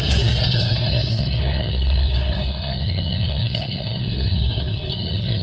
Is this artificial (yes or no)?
yes